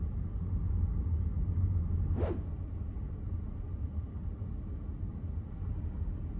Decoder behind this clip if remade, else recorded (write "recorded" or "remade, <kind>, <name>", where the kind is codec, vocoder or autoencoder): recorded